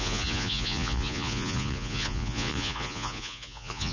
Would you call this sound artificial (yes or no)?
yes